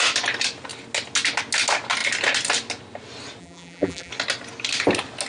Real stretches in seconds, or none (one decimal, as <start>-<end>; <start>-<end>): 0.0-3.4; 4.1-5.3